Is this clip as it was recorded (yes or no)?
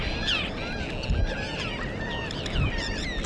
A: yes